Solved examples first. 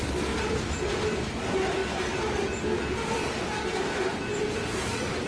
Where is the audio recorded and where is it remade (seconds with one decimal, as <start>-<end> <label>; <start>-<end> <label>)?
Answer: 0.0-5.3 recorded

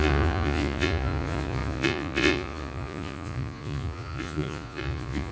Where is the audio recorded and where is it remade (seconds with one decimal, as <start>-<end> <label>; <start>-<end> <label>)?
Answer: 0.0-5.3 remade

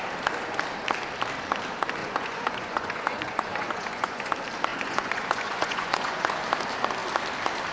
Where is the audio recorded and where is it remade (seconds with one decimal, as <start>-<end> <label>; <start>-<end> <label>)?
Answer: 0.0-2.0 recorded; 2.0-4.3 remade; 4.3-4.7 recorded; 4.7-6.4 remade; 6.4-7.7 recorded